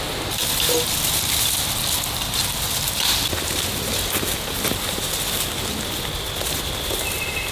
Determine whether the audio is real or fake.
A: real